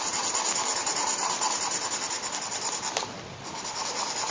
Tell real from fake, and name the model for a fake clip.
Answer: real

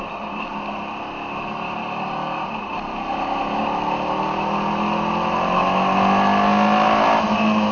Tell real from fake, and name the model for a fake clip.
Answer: real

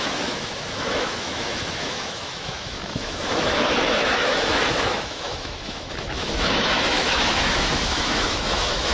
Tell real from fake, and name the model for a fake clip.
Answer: fake, autoencoder, DAC-VAE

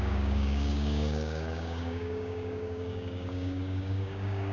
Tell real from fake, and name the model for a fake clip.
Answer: fake, codec, DAC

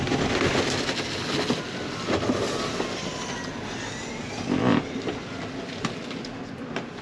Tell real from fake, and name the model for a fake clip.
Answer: real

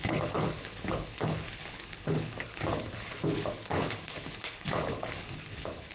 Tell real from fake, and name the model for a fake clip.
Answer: fake, codec, HILCodec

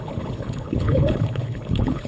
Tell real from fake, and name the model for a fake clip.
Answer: fake, codec, HILCodec